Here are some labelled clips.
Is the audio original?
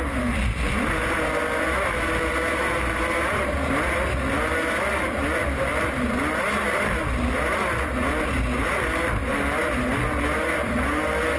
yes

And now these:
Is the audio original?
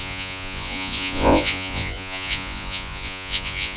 no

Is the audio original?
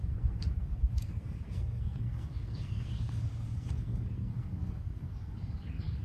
no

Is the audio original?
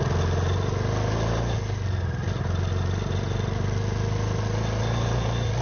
yes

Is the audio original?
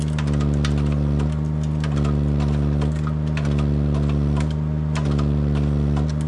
yes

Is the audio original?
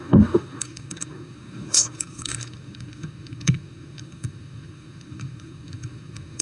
no